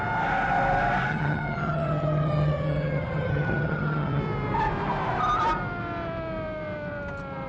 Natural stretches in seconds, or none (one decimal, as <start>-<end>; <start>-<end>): 0.0-1.1; 4.2-7.5